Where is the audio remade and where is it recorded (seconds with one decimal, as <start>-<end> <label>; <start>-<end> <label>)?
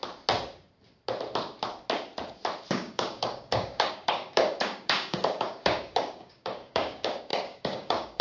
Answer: 0.0-2.7 recorded; 2.7-8.2 remade